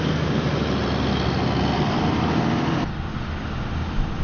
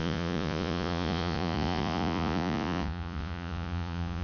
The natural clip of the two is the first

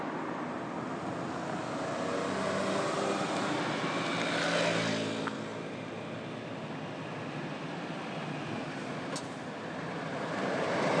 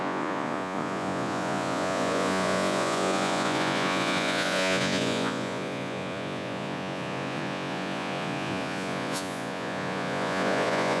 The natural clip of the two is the first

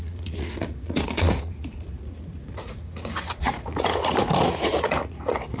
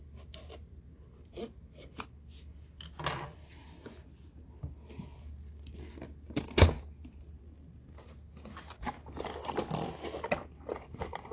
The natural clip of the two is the second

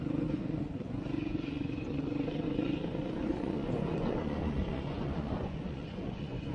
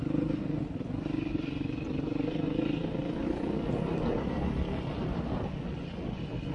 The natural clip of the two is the second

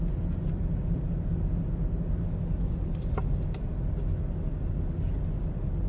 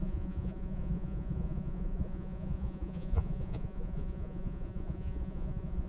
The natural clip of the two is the first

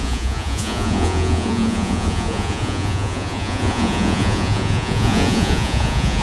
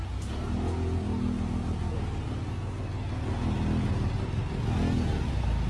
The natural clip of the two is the second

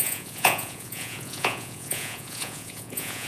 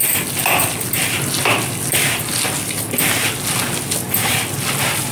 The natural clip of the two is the second